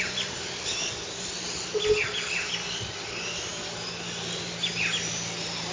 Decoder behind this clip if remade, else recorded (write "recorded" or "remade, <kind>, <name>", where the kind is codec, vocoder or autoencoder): recorded